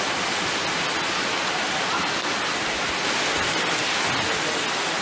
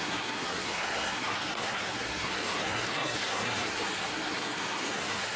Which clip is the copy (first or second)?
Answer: second